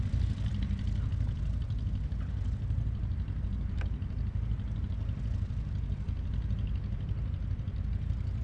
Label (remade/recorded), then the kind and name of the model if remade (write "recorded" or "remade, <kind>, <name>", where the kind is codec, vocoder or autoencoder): recorded